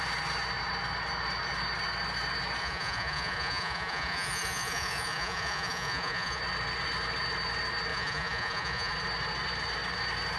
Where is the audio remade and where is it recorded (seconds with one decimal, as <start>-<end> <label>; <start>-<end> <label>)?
0.0-2.6 recorded; 2.6-6.4 remade; 6.4-7.9 recorded; 7.9-8.9 remade; 8.9-10.4 recorded